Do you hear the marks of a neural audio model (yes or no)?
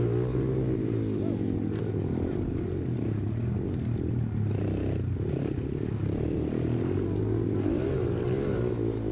no